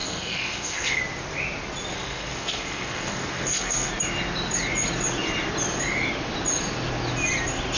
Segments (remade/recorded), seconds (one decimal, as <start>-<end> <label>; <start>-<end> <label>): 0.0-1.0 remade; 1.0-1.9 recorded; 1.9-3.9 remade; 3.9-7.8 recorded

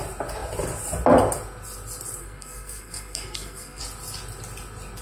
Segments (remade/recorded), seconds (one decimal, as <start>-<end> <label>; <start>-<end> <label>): 0.0-2.2 recorded; 2.2-3.8 remade; 3.8-5.0 recorded

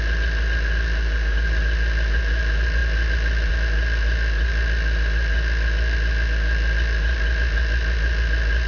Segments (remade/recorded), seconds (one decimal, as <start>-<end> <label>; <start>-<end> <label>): 0.0-8.7 recorded

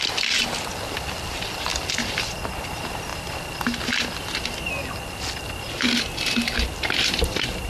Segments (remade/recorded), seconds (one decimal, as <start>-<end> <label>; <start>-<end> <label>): 0.0-7.7 recorded